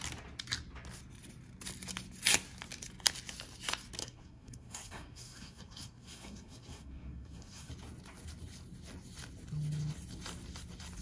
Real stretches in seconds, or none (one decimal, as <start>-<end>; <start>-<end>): 0.0-4.0; 7.7-11.0